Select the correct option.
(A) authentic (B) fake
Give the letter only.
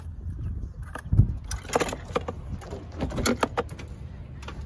A